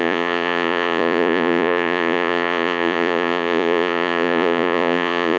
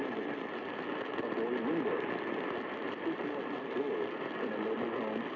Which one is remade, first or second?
first